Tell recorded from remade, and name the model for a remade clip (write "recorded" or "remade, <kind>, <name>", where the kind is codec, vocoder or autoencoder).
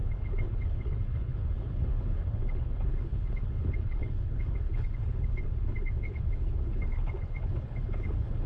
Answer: remade, codec, HILCodec